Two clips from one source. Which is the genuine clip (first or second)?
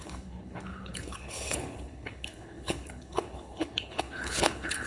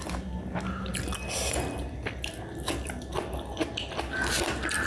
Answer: second